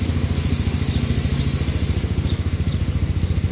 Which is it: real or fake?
real